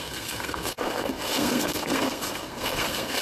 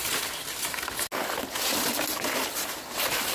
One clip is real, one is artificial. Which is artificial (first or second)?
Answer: first